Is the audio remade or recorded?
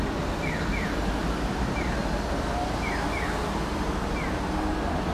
recorded